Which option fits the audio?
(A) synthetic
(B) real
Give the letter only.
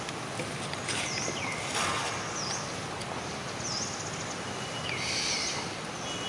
B